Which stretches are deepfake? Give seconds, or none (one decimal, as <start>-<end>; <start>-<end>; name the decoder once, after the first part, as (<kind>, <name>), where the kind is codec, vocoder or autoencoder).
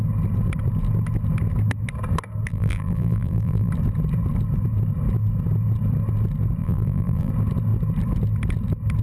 2.5-3.7 (vocoder, BigVGAN v2); 6.6-7.3